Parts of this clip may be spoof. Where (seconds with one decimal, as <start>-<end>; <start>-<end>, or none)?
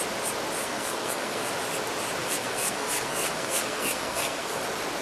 0.6-1.5; 2.2-4.6